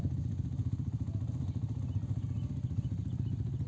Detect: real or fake real